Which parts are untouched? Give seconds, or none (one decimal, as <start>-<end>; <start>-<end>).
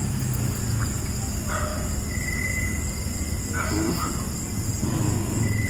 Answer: 0.0-5.7